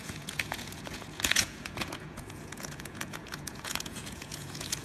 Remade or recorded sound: remade